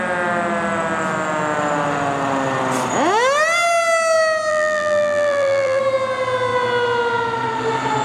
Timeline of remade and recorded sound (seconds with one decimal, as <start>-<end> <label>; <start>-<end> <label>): 0.0-4.5 recorded; 4.5-5.8 remade; 5.8-8.0 recorded